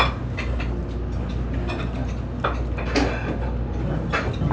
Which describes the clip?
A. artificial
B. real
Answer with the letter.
B